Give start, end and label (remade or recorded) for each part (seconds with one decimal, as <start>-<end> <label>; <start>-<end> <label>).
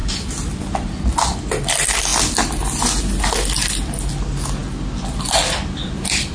0.0-6.3 recorded